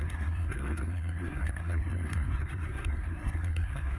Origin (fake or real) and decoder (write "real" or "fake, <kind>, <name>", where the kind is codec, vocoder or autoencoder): fake, codec, SNAC